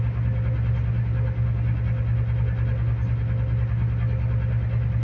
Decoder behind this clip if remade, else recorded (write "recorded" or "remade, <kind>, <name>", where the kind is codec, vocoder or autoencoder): recorded